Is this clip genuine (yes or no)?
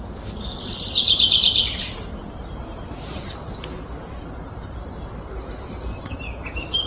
yes